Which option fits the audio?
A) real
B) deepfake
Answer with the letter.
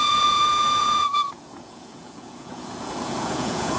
B